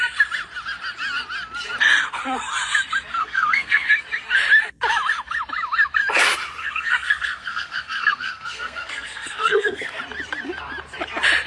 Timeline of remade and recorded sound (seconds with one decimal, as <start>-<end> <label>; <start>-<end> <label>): 0.0-3.2 recorded; 3.2-3.9 remade; 3.9-6.6 recorded; 6.6-10.0 remade; 10.0-11.5 recorded